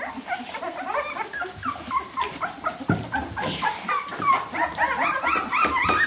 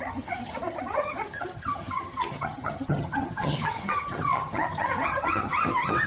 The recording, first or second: first